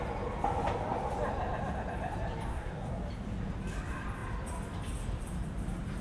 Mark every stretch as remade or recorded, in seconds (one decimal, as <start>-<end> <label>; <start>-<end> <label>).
0.0-2.5 recorded; 2.5-3.0 remade; 3.0-6.0 recorded